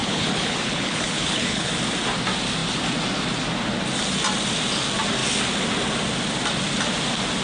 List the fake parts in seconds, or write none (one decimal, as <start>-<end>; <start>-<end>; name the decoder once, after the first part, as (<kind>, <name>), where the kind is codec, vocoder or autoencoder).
0.0-1.7 (codec, HILCodec)